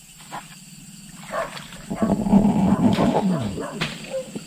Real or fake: real